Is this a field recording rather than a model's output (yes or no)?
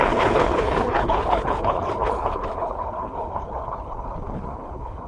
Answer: no